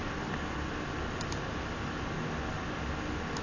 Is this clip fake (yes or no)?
no